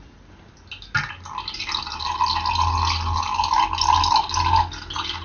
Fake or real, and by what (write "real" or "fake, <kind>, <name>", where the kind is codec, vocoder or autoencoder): real